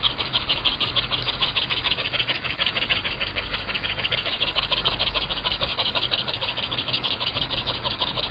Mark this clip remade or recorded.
remade